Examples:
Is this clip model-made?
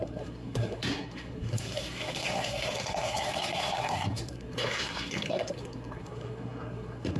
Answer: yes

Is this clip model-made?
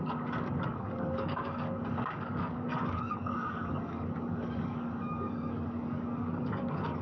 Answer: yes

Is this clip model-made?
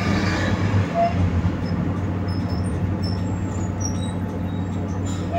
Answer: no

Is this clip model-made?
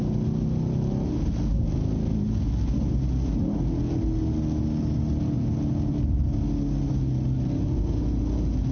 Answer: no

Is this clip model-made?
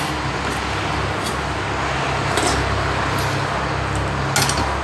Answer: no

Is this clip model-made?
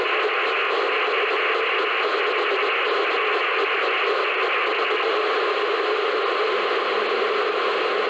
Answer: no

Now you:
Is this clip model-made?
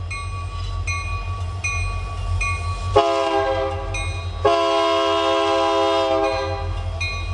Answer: no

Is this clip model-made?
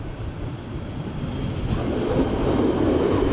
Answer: no